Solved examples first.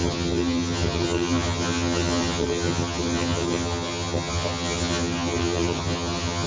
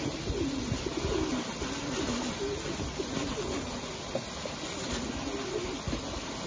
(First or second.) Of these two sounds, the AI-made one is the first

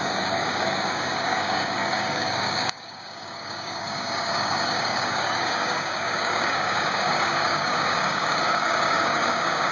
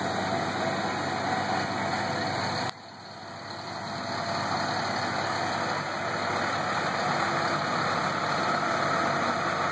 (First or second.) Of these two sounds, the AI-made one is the first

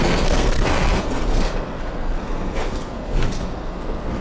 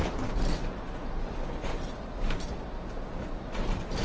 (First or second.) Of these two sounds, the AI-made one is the first